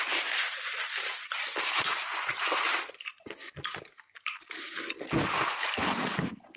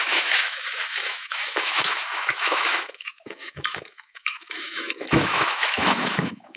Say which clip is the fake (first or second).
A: second